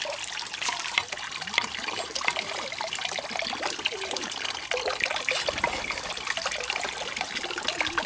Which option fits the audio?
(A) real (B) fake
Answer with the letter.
A